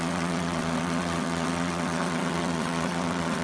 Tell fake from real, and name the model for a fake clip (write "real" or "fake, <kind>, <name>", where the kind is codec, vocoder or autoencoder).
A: fake, vocoder, WaveNeXt